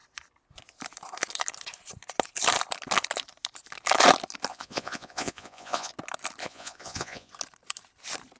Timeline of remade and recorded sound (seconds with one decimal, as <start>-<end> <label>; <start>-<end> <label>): 0.0-4.5 recorded; 4.5-5.9 remade; 5.9-6.4 recorded; 6.4-7.3 remade; 7.3-8.4 recorded